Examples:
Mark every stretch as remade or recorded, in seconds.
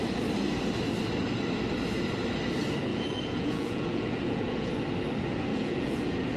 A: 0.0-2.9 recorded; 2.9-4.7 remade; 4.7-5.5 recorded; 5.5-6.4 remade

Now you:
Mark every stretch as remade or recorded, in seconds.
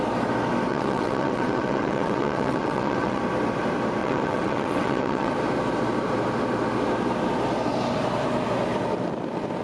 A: 0.0-0.7 recorded; 0.7-3.2 remade; 3.2-4.0 recorded; 4.0-5.3 remade; 5.3-9.6 recorded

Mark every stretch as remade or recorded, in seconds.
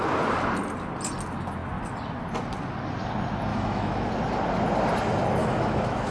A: 0.0-3.5 recorded; 3.5-4.1 remade; 4.1-5.4 recorded; 5.4-6.1 remade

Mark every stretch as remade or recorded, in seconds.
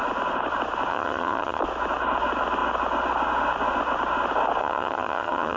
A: 0.0-0.9 recorded; 0.9-1.6 remade; 1.6-4.6 recorded; 4.6-5.6 remade